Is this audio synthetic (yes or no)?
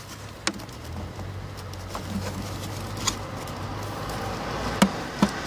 no